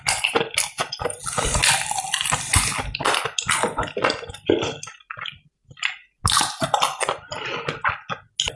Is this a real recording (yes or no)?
yes